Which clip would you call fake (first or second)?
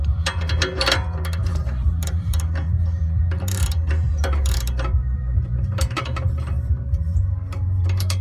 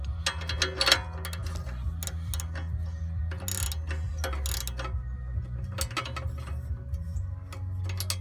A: first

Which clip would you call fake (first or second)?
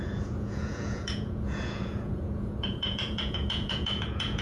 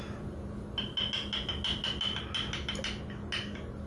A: first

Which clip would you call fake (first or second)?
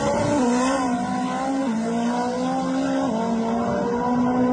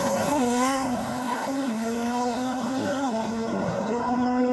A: second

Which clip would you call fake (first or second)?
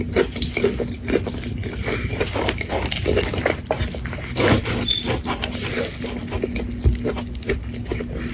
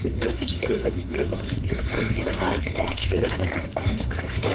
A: second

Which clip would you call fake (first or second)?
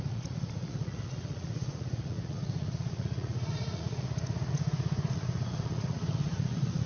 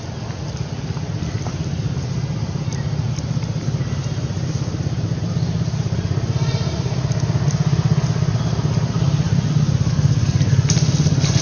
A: first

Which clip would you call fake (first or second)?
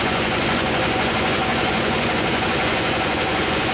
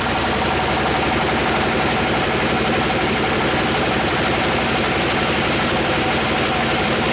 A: first